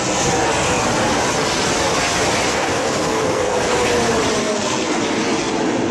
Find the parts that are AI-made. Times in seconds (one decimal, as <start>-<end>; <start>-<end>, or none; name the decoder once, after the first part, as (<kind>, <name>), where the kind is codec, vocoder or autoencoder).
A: 2.5-3.7 (codec, SNAC); 4.4-5.0